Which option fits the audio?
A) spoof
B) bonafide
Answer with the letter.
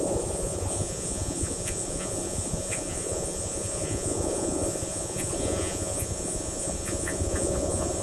A